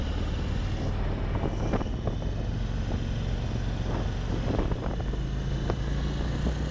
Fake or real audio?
real